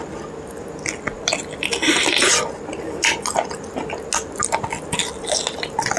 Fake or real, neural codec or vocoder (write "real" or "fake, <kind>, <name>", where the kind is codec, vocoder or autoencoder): real